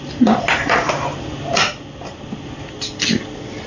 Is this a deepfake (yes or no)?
no